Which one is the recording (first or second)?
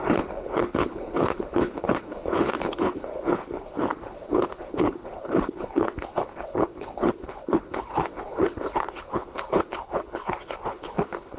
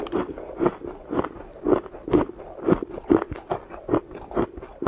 second